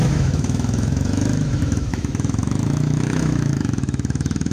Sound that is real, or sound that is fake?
fake